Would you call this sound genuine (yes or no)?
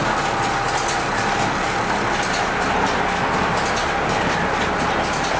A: yes